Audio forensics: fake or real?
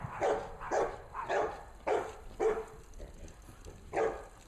real